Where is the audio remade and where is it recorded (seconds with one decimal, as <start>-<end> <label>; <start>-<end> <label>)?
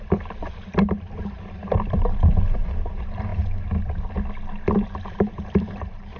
0.0-3.3 remade; 3.3-4.7 recorded; 4.7-6.2 remade